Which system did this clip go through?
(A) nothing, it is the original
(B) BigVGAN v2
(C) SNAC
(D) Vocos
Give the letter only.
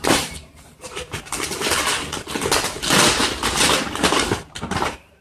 B